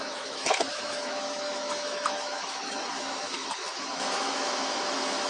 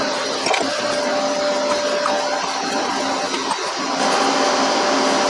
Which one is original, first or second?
second